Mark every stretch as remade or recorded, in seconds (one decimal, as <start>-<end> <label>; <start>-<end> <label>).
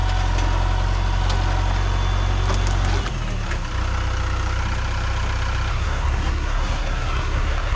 0.0-5.7 recorded; 5.7-7.8 remade